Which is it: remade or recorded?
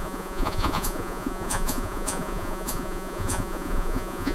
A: remade